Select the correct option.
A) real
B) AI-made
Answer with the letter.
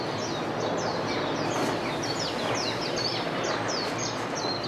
A